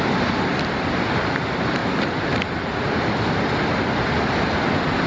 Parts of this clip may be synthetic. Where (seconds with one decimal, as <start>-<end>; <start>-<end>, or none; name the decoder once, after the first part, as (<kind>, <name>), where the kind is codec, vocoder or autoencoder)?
none

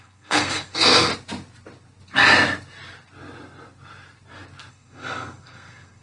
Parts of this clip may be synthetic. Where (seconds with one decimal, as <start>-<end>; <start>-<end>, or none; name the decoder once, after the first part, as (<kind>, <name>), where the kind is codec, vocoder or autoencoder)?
0.0-1.1 (codec, SNAC); 4.7-6.0

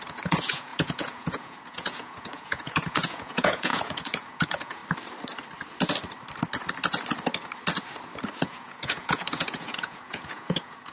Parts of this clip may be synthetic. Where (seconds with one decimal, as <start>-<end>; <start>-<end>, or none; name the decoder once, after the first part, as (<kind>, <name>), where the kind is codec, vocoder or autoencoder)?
0.0-4.8 (vocoder, Vocos); 8.4-10.9